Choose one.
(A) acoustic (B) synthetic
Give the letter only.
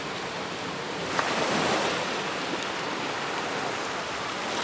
A